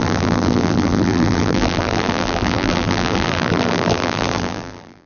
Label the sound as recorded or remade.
remade